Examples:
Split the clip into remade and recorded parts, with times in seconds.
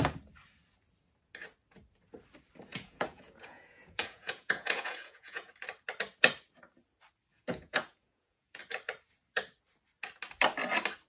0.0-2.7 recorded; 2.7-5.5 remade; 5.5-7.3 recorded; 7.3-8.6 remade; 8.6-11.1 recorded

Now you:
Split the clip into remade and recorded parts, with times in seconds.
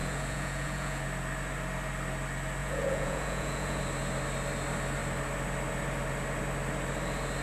0.0-1.0 remade; 1.0-2.6 recorded; 2.6-3.8 remade; 3.8-7.4 recorded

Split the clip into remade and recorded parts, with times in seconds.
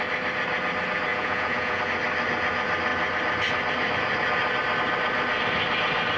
0.0-1.1 recorded; 1.1-1.8 remade; 1.8-6.2 recorded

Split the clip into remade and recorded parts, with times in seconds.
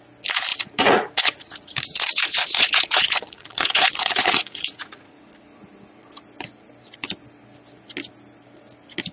0.0-0.5 recorded; 0.5-5.2 remade; 5.2-9.1 recorded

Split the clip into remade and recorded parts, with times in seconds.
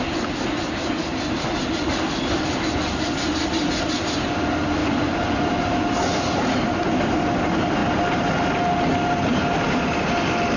0.0-4.8 recorded; 4.8-5.4 remade; 5.4-10.6 recorded